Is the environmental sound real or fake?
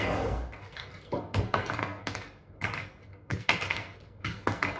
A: fake